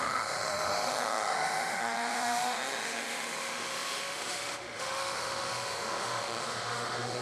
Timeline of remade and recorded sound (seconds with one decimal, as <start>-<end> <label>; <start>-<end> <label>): 0.0-7.2 remade